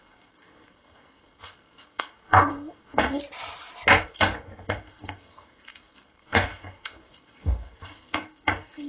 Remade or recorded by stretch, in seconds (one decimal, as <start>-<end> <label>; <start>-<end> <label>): 0.0-3.2 remade; 3.2-4.0 recorded; 4.0-8.9 remade

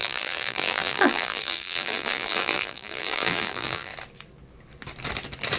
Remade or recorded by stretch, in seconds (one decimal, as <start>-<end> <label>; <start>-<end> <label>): 0.0-3.9 remade; 3.9-5.6 recorded

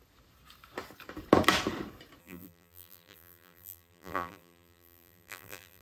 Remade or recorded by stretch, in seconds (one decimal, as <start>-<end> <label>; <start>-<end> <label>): 0.0-2.2 recorded; 2.2-5.8 remade

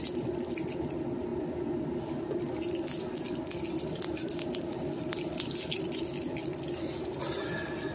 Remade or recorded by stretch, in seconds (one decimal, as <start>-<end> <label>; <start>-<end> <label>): 0.0-7.9 recorded

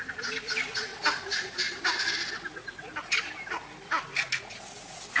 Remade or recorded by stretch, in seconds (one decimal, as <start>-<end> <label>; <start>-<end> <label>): 0.0-5.2 recorded

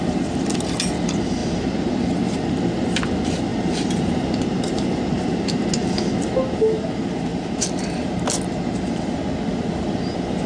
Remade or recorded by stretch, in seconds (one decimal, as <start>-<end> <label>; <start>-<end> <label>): 0.0-1.4 recorded; 1.4-1.9 remade; 1.9-3.5 recorded; 3.5-5.7 remade; 5.7-7.3 recorded; 7.3-7.8 remade; 7.8-10.5 recorded

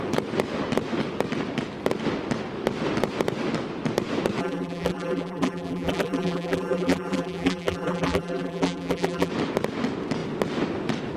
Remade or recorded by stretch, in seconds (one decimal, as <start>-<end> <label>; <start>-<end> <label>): 0.0-4.4 recorded; 4.4-9.3 remade; 9.3-11.2 recorded

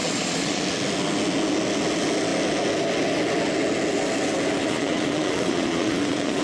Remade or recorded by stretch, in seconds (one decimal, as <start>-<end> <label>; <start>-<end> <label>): 0.0-0.6 remade; 0.6-4.6 recorded; 4.6-6.4 remade